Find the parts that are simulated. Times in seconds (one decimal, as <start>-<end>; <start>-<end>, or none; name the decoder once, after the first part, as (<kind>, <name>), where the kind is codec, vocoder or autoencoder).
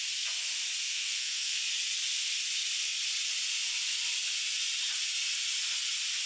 0.9-1.6 (codec, SNAC)